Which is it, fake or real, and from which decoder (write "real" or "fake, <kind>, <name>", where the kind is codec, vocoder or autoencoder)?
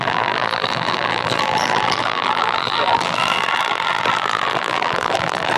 fake, vocoder, BigVGAN v2